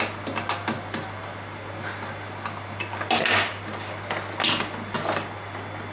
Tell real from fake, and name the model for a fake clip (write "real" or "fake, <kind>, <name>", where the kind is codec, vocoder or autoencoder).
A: real